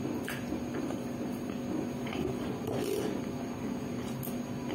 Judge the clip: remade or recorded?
recorded